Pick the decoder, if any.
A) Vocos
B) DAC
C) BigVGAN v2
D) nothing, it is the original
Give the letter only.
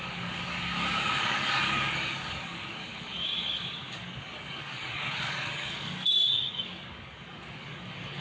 B